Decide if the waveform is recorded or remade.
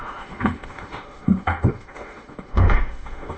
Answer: remade